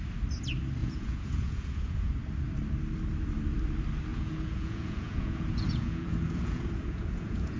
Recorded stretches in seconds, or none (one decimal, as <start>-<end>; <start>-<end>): 0.0-0.8; 2.1-4.1